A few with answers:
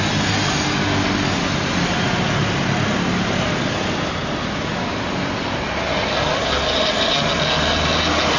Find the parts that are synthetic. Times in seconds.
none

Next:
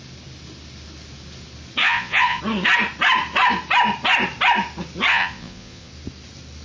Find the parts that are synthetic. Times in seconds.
1.8-2.4 (vocoder, Vocos); 5.1-5.9

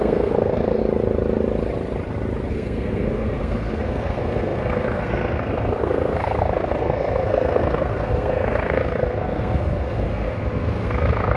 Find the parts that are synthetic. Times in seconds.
0.0-0.8 (codec, SNAC); 2.5-11.4

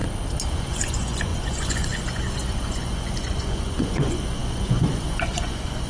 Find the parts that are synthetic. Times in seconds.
0.5-5.9 (vocoder, Vocos)

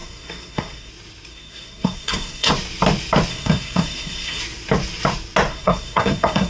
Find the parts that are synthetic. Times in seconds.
0.0-0.9 (codec, SNAC); 1.3-2.5; 3.3-4.4; 5.5-6.5

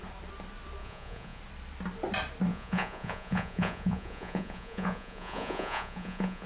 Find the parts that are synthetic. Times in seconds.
0.8-1.4 (vocoder, Vocos); 2.5-6.5

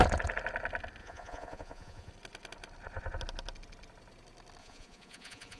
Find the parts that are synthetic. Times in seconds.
1.0-2.1 (vocoder, Vocos); 4.6-5.6